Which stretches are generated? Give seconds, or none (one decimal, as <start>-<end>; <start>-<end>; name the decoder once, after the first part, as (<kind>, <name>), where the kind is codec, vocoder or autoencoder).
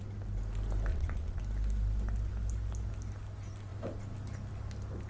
0.9-1.4 (vocoder, Vocos)